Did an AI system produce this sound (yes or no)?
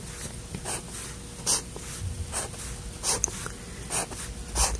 no